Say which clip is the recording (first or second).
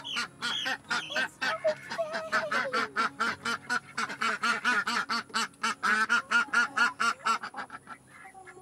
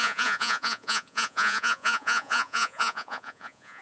first